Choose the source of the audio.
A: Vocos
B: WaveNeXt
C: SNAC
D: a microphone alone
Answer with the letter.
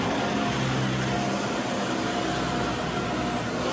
D